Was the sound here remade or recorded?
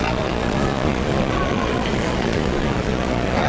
remade